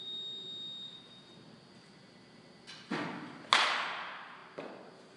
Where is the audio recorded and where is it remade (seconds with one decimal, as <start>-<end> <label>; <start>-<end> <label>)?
0.0-5.2 recorded